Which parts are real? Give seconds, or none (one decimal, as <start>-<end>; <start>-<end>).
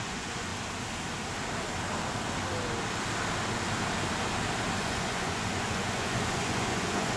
0.5-4.8